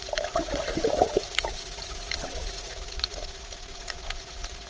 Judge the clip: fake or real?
fake